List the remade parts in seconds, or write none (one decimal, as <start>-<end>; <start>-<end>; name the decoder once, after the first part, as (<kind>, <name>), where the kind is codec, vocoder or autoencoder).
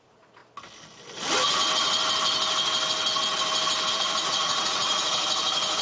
0.0-0.4 (vocoder, Vocos); 3.9-5.8